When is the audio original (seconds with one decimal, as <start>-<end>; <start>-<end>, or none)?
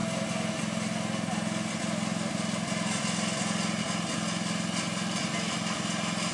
0.0-6.3